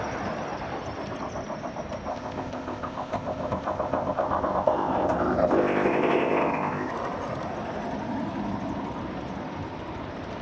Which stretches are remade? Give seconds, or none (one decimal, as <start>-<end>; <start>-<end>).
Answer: 2.1-6.9